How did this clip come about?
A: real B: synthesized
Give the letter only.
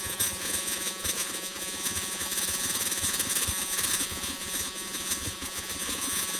B